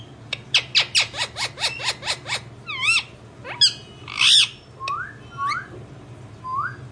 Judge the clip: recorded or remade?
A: recorded